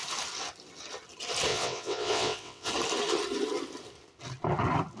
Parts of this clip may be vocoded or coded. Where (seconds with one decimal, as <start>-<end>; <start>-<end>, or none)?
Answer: 1.5-2.7